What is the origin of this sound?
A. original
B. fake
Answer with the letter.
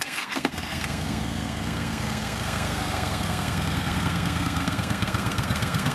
B